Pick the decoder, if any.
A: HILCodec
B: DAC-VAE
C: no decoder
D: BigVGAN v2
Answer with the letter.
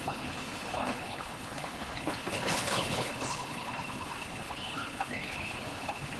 A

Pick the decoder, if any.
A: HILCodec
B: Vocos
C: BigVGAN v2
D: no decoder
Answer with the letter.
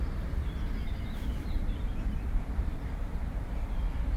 C